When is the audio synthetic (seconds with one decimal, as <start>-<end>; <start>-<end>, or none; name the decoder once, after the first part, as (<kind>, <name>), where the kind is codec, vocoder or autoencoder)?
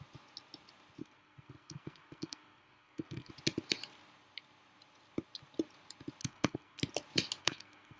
1.0-3.3 (codec, SNAC); 6.2-6.8; 7.4-8.0